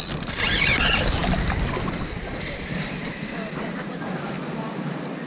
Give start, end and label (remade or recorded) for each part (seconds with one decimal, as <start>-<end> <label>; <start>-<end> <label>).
0.0-5.3 recorded